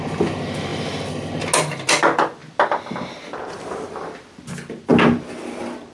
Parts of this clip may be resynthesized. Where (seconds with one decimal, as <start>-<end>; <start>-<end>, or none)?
0.7-1.3; 4.9-5.5